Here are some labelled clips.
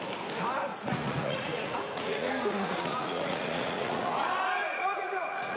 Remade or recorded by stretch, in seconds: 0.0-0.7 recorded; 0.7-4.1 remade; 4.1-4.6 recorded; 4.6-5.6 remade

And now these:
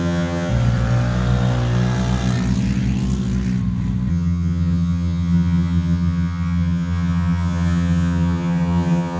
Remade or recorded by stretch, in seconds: 0.0-0.5 remade; 0.5-4.1 recorded; 4.1-9.2 remade

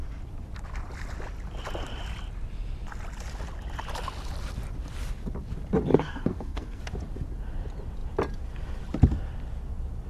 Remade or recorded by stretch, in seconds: 0.0-5.9 recorded; 5.9-6.8 remade; 6.8-10.1 recorded

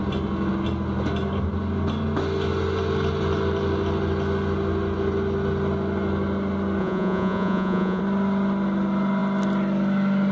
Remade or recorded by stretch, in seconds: 0.0-6.8 recorded; 6.8-8.0 remade; 8.0-10.3 recorded